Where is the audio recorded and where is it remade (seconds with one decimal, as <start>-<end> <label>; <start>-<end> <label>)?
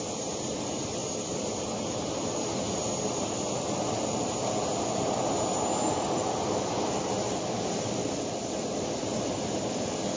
0.0-10.2 recorded